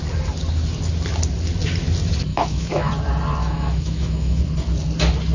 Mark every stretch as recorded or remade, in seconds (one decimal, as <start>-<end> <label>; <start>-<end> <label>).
0.0-2.3 recorded; 2.3-2.9 remade; 2.9-3.4 recorded; 3.4-4.4 remade; 4.4-5.3 recorded